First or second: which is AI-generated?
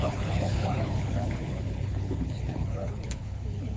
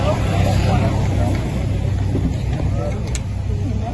first